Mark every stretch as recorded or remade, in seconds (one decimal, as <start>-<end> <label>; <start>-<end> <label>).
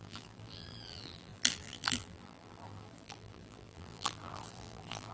0.0-5.1 remade